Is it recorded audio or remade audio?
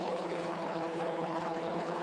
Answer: remade